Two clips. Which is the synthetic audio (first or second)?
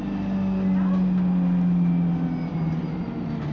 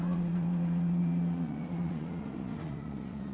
second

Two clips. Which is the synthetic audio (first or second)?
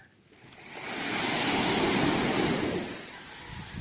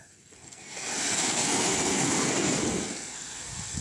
second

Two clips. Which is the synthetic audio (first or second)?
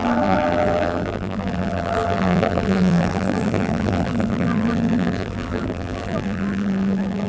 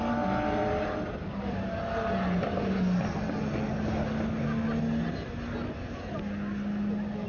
first